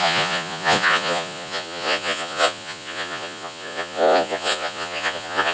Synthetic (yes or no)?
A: yes